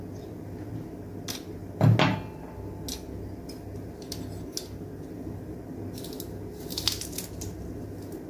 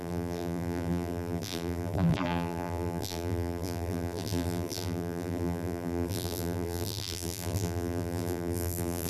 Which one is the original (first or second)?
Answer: first